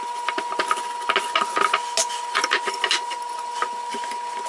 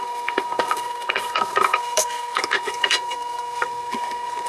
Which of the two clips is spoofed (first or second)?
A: second